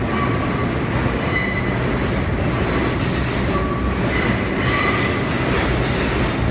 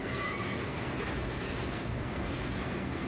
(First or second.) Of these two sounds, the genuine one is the first